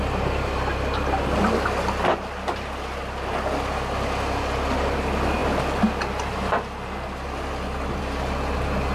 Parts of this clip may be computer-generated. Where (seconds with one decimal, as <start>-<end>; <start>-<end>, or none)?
none